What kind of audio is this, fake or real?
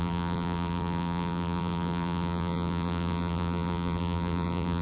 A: fake